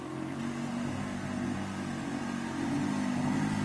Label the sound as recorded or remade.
recorded